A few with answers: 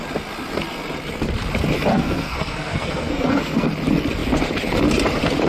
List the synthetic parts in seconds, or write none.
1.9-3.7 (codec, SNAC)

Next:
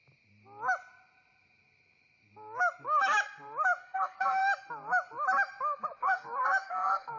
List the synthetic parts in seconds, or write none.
3.8-4.4 (codec, SNAC); 6.0-7.2

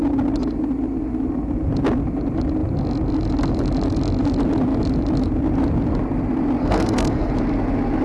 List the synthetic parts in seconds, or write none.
6.6-7.3 (codec, SNAC)

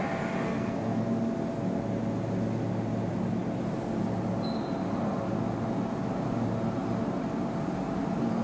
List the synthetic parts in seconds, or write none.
0.4-1.0 (codec, SNAC)

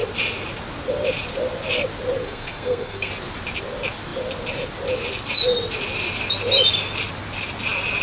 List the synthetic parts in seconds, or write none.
2.2-3.1 (codec, SNAC)

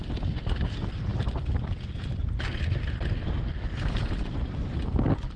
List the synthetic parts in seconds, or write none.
none

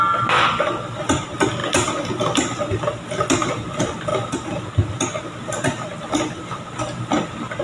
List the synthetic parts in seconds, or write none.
none